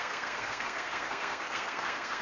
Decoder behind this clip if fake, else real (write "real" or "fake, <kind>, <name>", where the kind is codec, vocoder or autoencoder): fake, codec, SNAC